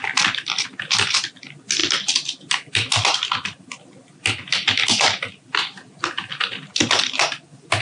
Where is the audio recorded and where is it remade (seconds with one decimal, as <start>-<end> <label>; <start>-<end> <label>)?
0.0-7.8 recorded